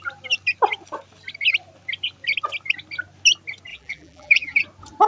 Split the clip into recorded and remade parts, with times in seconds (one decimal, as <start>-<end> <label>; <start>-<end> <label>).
0.0-3.7 recorded; 3.7-4.6 remade; 4.6-5.1 recorded